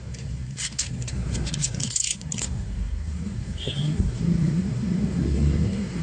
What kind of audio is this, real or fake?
fake